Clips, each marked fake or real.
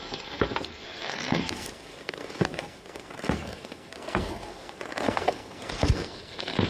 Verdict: fake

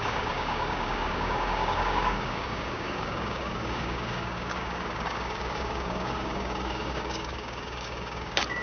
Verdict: fake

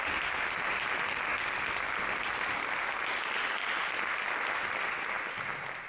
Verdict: real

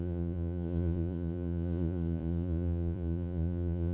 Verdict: fake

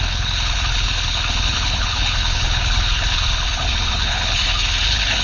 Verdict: fake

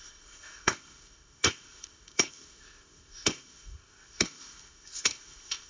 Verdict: fake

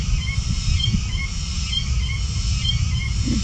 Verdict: fake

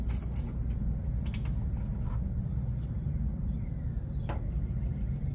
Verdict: real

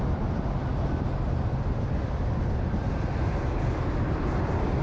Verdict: real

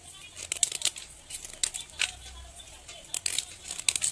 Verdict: real